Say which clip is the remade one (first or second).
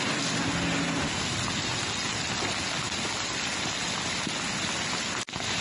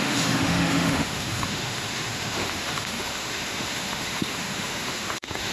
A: second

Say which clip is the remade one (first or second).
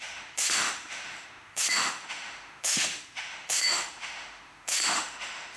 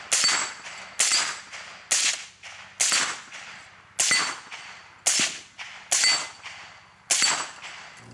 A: first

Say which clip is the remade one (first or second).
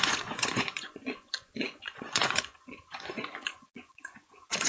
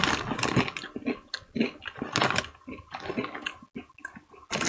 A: first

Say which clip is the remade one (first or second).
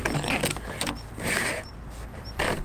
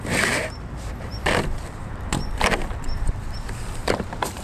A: second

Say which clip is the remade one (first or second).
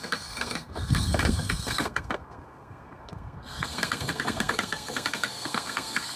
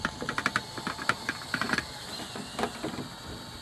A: first